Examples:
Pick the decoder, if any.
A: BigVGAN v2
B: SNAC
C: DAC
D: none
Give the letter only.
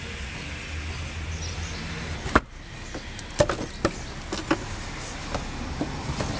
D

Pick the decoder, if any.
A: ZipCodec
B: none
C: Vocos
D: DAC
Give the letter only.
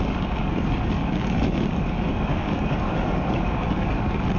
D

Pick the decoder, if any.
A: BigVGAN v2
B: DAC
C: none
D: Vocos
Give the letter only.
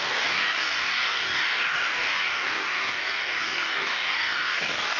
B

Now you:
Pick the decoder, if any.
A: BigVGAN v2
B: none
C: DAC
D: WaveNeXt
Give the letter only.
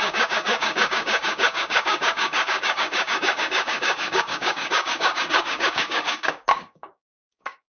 C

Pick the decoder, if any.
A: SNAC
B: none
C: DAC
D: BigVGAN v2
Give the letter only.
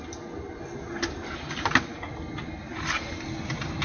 B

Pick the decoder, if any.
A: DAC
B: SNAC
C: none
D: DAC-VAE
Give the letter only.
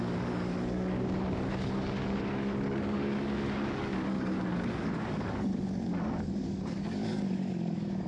A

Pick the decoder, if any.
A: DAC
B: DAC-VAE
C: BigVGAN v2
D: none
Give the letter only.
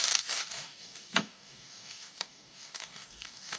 A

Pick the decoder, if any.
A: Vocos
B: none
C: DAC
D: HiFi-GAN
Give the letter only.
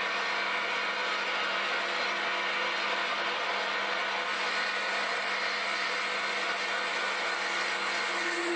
B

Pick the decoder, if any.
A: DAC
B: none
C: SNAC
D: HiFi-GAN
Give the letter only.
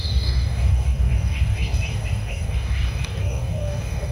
A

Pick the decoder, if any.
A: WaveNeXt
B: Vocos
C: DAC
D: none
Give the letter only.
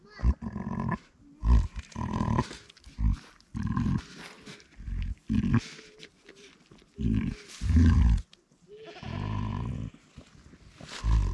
D